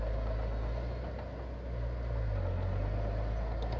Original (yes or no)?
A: yes